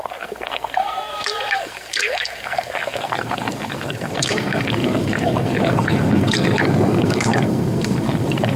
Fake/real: fake